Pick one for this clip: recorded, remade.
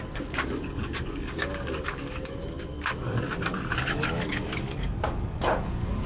remade